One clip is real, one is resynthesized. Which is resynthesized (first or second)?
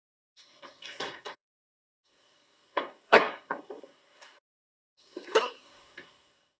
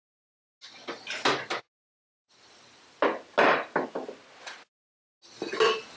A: first